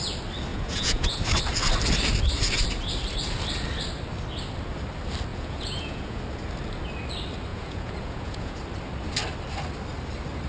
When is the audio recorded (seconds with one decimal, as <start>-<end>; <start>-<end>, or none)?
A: 0.0-0.5; 1.2-5.3; 6.2-7.5; 8.6-10.5